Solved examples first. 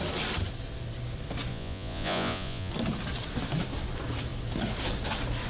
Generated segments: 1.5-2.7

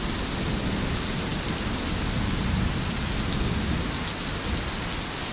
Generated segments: none

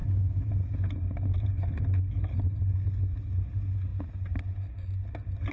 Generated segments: none

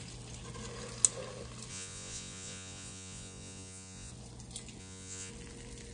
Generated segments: 1.7-4.1; 4.8-5.3